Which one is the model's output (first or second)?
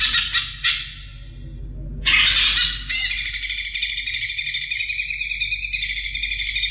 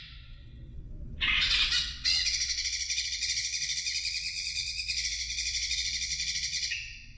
second